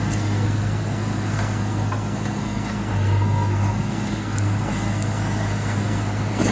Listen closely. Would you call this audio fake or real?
fake